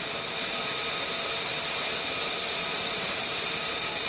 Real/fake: real